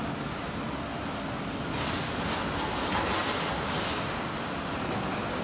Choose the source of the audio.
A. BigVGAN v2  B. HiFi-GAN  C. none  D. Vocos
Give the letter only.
C